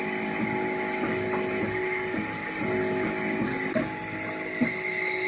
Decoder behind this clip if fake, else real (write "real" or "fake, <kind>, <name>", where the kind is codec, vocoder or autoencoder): real